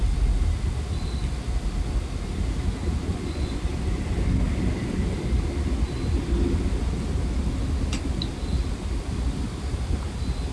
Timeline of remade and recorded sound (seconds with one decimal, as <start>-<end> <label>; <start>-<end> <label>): 0.0-3.1 recorded; 3.1-3.6 remade; 3.6-10.5 recorded